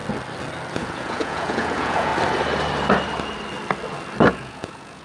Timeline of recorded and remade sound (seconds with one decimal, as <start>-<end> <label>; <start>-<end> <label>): 0.0-0.7 recorded; 0.7-2.1 remade; 2.1-4.3 recorded; 4.3-5.0 remade